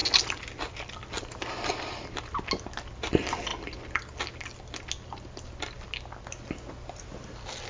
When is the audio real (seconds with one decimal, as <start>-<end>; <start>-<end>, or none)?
0.0-7.7